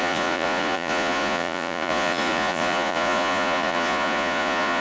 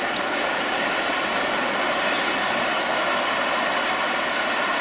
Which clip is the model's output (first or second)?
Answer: first